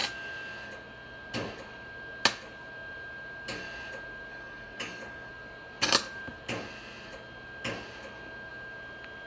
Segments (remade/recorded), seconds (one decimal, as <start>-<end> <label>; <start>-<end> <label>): 0.0-4.3 recorded; 4.3-5.3 remade; 5.3-9.3 recorded